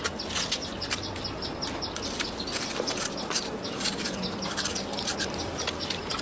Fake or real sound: real